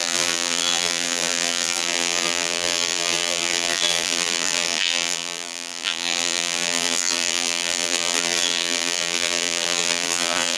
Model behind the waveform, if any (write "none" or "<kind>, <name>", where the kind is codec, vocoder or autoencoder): vocoder, BigVGAN v2